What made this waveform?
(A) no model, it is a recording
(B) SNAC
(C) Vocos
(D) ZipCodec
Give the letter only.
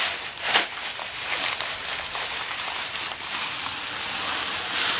A